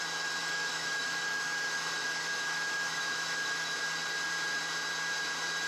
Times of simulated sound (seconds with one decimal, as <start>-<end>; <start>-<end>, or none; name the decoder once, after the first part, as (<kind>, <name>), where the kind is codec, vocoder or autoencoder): 0.4-3.8 (autoencoder, DAC-VAE)